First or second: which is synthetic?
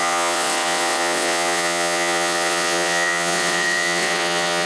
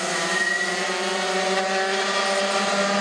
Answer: first